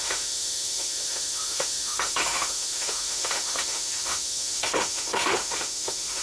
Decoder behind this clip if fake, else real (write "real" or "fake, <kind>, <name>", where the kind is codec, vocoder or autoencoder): fake, autoencoder, DAC-VAE